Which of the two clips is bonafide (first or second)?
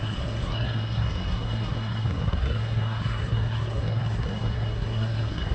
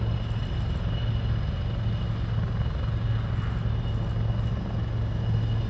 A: second